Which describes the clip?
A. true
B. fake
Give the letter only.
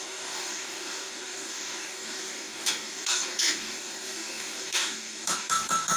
B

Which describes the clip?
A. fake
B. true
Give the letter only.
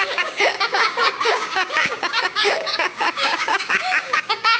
A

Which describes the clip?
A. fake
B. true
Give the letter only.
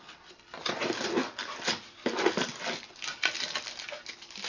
B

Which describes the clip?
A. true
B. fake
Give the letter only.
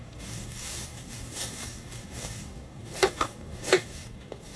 B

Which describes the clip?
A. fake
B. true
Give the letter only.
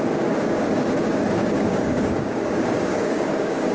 A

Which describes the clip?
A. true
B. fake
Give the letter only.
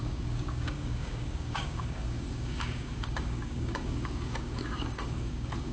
B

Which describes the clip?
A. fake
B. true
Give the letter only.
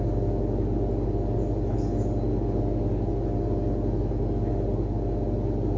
B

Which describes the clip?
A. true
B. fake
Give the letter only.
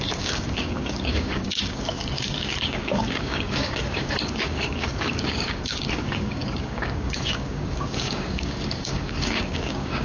B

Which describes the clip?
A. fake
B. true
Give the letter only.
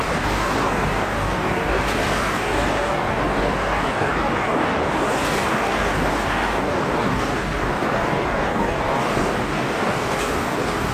A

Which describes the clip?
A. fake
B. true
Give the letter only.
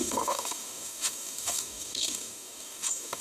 A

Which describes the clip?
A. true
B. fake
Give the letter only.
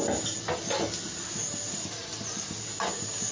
A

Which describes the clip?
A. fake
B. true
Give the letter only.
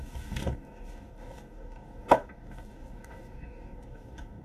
A